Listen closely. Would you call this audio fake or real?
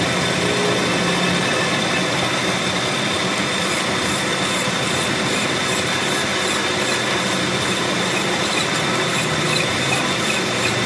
real